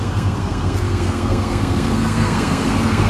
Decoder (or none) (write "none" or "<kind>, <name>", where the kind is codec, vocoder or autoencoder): codec, SNAC